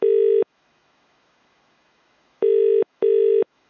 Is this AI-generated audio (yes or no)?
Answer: yes